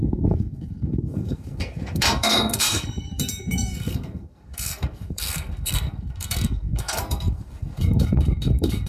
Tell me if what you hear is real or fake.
fake